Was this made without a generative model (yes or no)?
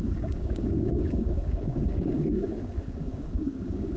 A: no